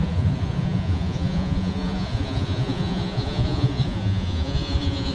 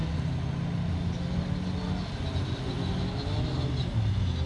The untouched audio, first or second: second